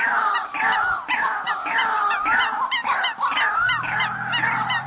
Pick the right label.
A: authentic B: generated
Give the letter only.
A